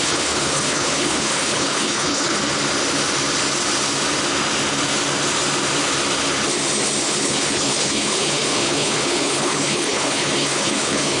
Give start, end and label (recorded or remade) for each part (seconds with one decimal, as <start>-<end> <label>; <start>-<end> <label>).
0.0-2.4 remade; 2.4-7.0 recorded; 7.0-11.2 remade